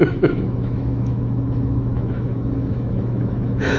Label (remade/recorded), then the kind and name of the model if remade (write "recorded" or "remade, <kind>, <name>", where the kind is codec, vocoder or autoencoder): remade, autoencoder, DAC-VAE